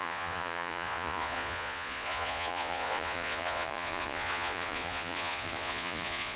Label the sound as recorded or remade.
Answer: remade